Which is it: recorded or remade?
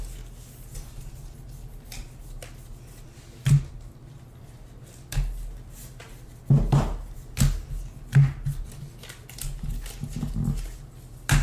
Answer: recorded